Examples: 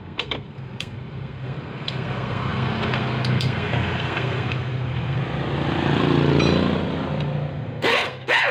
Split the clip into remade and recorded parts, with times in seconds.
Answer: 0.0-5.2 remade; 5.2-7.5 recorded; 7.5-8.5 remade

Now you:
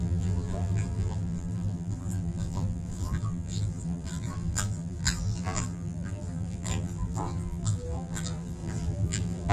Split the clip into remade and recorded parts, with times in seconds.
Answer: 0.0-9.5 remade

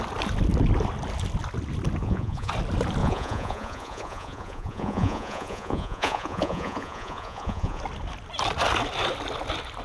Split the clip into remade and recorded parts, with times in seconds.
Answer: 0.0-2.0 recorded; 2.0-2.5 remade; 2.5-3.0 recorded; 3.0-7.8 remade; 7.8-9.8 recorded

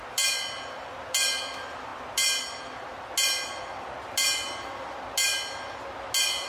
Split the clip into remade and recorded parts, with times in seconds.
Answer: 0.0-6.5 recorded

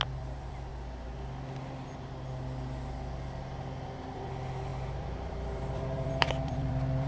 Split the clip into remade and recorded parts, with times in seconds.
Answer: 0.0-0.7 remade; 0.7-4.0 recorded; 4.0-7.1 remade